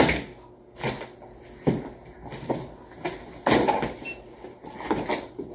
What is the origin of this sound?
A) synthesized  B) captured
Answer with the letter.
B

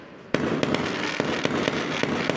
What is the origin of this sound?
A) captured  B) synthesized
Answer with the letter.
A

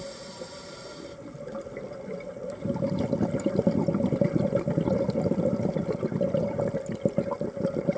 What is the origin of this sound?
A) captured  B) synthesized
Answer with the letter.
A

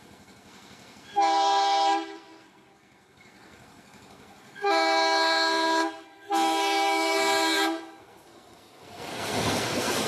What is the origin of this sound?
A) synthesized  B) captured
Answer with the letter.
A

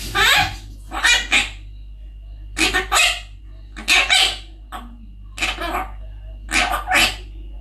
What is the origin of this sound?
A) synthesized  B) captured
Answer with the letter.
B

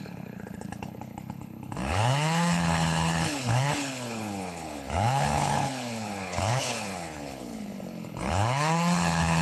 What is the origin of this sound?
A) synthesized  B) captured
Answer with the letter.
A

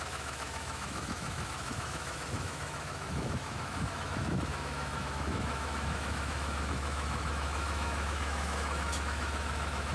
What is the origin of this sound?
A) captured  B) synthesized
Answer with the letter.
B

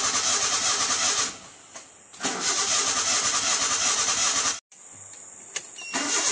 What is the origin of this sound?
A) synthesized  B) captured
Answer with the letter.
B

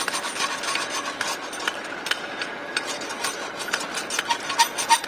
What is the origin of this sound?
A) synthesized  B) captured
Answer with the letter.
B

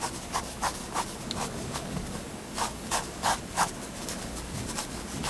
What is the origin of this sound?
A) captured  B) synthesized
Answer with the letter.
B